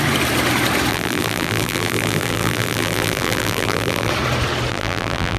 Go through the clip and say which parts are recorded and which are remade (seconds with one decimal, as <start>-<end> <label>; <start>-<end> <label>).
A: 0.0-0.9 recorded; 0.9-4.1 remade; 4.1-4.7 recorded; 4.7-5.4 remade